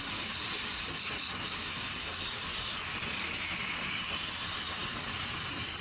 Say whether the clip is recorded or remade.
recorded